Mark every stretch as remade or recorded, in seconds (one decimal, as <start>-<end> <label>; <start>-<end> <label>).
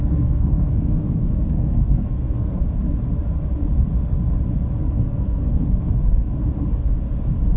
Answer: 0.0-2.6 remade; 2.6-4.8 recorded; 4.8-6.3 remade; 6.3-7.6 recorded